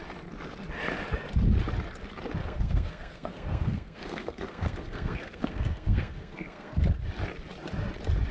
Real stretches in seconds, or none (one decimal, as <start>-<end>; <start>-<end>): 0.0-2.4; 6.8-8.3